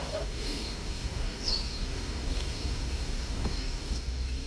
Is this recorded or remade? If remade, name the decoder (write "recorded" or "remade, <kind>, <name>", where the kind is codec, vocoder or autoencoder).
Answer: remade, codec, DAC